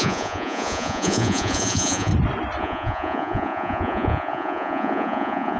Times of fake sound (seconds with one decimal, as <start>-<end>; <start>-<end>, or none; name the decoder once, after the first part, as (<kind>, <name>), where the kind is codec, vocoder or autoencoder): 0.0-2.1 (vocoder, Vocos); 2.6-5.6